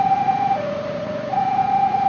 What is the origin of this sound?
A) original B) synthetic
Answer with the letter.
B